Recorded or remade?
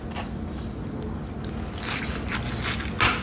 recorded